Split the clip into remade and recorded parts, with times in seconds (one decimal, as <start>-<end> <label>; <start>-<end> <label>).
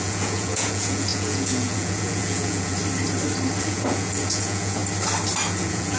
0.0-2.8 remade; 2.8-3.6 recorded; 3.6-4.8 remade; 4.8-5.5 recorded; 5.5-6.0 remade